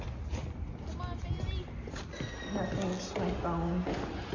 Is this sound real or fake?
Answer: real